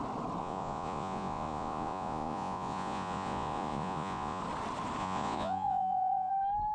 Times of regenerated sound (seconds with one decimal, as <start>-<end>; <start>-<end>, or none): 0.4-4.4; 5.0-6.3